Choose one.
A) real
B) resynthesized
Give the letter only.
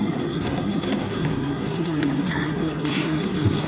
B